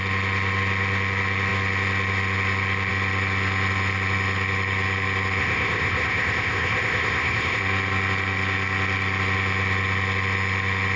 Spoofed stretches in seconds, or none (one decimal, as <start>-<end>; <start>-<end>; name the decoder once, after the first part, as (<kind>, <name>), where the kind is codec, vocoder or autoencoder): 5.4-7.6 (codec, ZipCodec)